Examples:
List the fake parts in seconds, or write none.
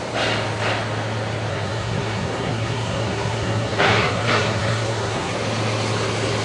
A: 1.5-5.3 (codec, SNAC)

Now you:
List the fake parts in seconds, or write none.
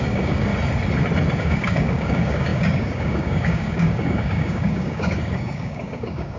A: 0.0-0.5 (codec, DAC); 1.4-6.4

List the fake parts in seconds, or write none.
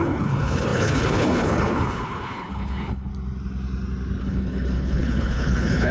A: 0.0-3.1 (codec, HILCodec); 4.2-5.9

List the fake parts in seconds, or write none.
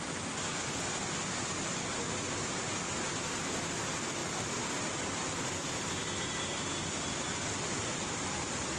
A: none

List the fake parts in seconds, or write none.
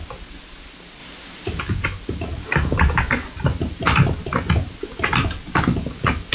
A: 1.0-1.6 (vocoder, BigVGAN v2)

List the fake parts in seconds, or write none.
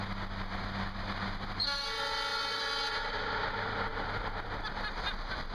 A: none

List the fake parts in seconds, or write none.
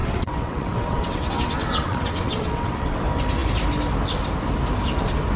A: 0.0-3.0 (vocoder, WaveNeXt)